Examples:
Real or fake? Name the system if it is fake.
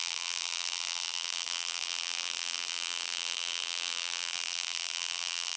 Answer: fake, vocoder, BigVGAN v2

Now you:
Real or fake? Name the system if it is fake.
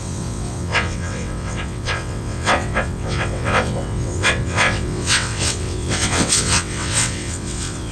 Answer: fake, vocoder, WaveNeXt